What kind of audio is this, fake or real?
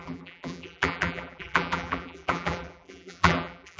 fake